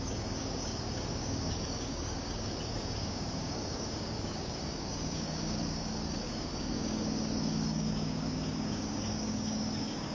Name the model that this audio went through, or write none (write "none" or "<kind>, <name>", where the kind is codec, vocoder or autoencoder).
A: codec, DAC